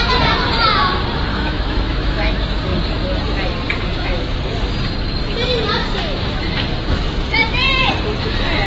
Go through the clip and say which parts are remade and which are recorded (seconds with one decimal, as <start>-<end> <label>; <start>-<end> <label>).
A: 0.0-1.3 recorded; 1.3-2.3 remade; 2.3-3.9 recorded; 3.9-4.4 remade; 4.4-5.8 recorded; 5.8-7.9 remade; 7.9-8.7 recorded